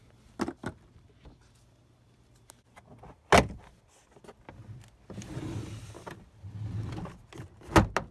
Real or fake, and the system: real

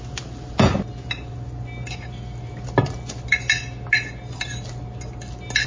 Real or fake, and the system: real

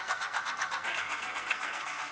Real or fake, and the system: fake, codec, SNAC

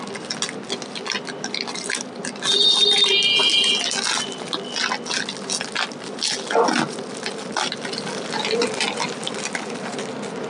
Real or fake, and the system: real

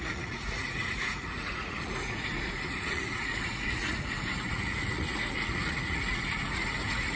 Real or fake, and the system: fake, vocoder, Vocos